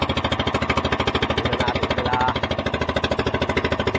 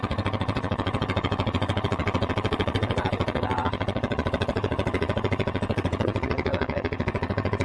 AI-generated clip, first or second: second